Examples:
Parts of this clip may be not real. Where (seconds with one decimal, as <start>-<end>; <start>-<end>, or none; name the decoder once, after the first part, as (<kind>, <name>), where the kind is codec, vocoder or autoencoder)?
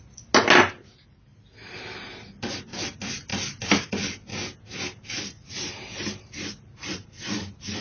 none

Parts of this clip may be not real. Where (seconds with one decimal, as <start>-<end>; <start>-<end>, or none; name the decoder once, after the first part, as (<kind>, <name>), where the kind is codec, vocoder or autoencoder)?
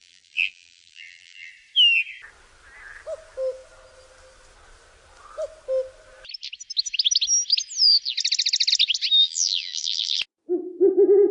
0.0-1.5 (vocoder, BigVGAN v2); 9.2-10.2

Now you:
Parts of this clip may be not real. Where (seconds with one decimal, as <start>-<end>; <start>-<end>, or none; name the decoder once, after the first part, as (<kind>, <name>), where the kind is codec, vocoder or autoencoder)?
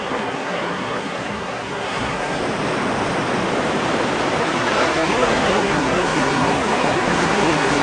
0.0-2.4 (codec, SNAC); 4.4-7.8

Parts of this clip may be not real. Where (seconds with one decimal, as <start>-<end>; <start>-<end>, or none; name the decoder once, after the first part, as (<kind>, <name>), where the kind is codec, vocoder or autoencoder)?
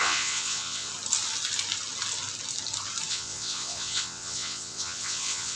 0.0-0.9 (vocoder, WaveNeXt); 3.1-5.6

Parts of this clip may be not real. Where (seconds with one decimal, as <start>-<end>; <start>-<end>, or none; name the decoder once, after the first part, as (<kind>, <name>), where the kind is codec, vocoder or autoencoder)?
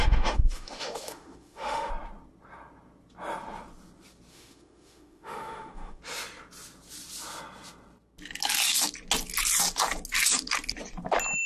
0.0-1.9 (autoencoder, DAC-VAE); 4.3-6.0